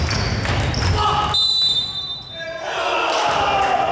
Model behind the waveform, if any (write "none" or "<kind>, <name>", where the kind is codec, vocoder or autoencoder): none